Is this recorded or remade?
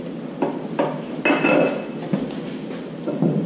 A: recorded